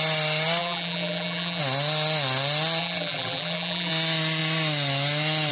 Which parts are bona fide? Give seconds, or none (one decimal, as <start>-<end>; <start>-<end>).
0.0-0.6; 1.6-2.8; 3.9-5.5